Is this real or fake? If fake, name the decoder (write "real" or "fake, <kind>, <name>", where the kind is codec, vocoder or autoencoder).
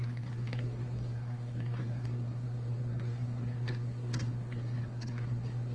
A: fake, codec, SNAC